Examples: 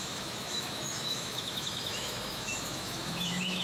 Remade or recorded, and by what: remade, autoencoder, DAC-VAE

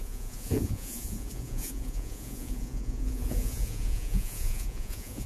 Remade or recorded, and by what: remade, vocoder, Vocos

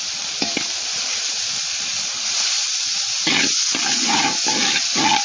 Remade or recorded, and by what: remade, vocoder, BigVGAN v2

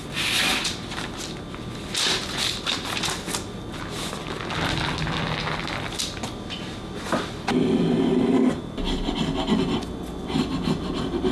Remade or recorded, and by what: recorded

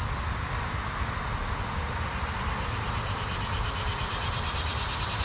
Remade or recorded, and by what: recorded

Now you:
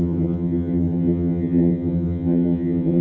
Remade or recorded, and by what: remade, vocoder, HiFi-GAN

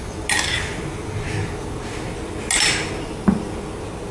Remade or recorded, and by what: recorded